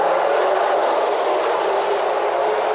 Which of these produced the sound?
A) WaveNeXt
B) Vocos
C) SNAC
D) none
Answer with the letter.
D